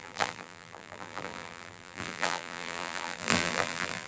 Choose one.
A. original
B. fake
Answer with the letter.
B